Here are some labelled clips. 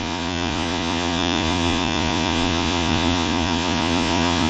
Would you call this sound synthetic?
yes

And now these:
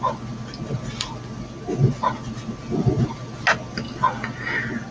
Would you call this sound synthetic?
no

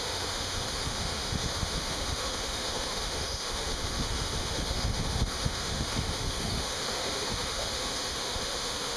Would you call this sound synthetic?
yes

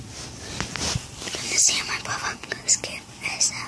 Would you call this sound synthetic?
no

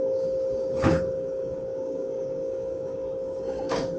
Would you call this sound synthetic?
yes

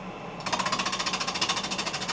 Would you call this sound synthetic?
no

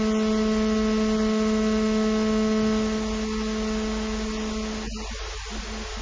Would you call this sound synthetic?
no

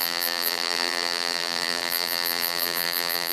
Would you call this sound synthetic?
yes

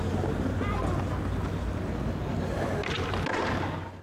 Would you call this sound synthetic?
no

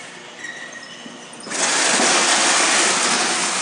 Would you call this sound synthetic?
no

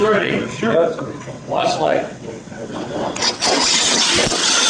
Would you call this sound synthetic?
yes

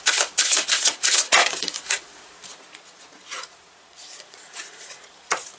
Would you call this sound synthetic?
yes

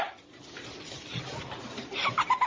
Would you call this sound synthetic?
yes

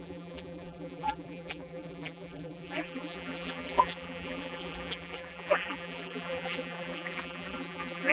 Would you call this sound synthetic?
yes